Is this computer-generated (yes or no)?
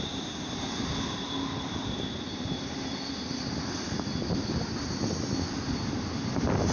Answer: no